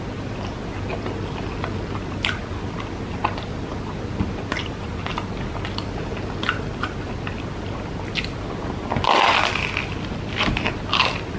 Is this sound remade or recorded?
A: recorded